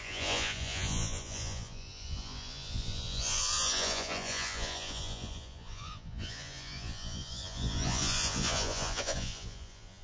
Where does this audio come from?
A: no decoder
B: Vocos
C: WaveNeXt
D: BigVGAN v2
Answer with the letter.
B